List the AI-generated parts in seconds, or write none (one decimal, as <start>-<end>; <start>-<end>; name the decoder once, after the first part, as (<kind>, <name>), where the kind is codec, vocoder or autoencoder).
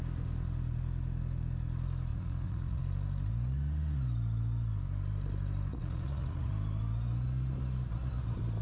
2.1-2.8 (vocoder, Vocos); 5.7-6.5